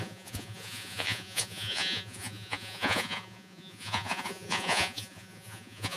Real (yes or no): no